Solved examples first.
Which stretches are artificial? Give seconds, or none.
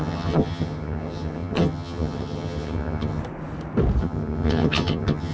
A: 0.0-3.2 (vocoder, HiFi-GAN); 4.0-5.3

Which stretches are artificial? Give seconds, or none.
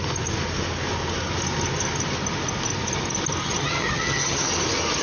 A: 3.4-4.5 (vocoder, HiFi-GAN)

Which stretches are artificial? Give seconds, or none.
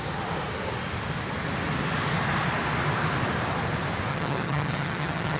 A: 4.1-5.4 (vocoder, HiFi-GAN)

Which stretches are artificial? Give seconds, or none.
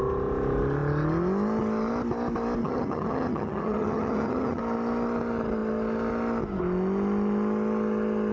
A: 2.6-4.6 (vocoder, HiFi-GAN)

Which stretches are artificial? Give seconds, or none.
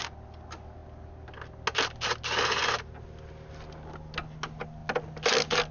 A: none